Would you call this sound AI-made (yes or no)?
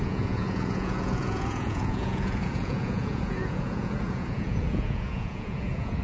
yes